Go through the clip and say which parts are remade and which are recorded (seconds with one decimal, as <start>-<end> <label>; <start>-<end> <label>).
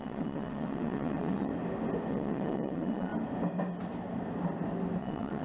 0.0-1.5 remade; 1.5-2.1 recorded; 2.1-3.1 remade; 3.1-5.0 recorded; 5.0-5.4 remade